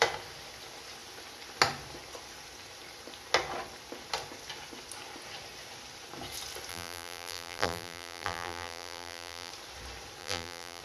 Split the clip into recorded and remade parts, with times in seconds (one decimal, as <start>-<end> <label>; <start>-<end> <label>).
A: 0.0-6.7 recorded; 6.7-9.5 remade; 9.5-10.2 recorded; 10.2-10.8 remade